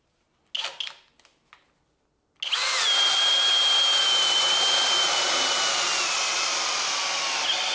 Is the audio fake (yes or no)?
no